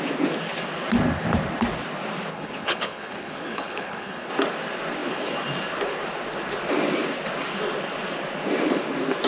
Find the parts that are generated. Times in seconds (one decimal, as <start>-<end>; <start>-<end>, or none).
2.3-4.3